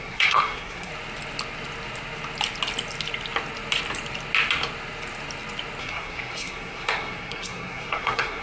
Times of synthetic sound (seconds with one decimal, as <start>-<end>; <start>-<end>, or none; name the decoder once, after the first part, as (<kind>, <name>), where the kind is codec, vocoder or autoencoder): 0.0-0.9 (codec, SNAC); 5.8-8.4